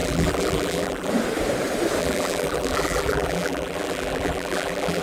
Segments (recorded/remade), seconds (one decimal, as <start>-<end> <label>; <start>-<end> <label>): 0.0-1.1 remade; 1.1-2.0 recorded; 2.0-5.0 remade

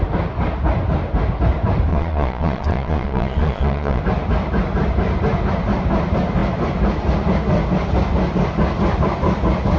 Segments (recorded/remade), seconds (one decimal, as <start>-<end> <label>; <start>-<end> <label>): 0.0-1.9 recorded; 1.9-4.0 remade; 4.0-9.8 recorded